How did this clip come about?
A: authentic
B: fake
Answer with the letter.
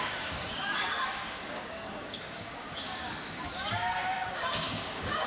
B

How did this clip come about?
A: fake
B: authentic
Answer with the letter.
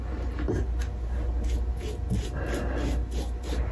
B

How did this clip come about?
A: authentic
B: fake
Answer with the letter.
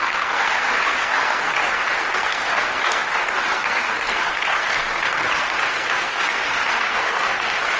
B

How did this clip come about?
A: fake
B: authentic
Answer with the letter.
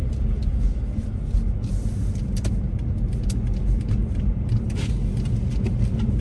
B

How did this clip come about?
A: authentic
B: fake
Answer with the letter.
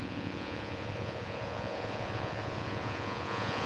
B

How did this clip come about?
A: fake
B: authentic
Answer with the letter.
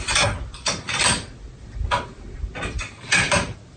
B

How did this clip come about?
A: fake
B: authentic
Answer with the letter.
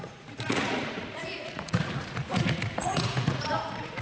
A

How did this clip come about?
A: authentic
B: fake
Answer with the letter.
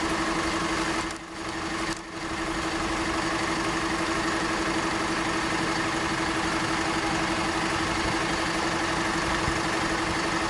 A